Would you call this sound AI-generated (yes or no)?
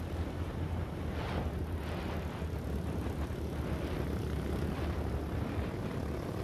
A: no